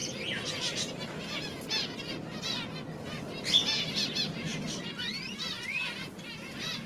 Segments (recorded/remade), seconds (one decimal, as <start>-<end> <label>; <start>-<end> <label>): 0.0-6.9 recorded